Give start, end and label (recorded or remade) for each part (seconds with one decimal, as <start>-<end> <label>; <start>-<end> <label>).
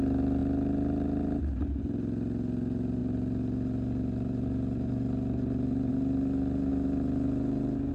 0.0-7.9 recorded